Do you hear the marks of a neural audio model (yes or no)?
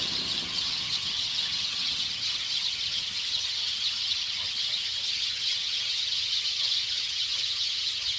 yes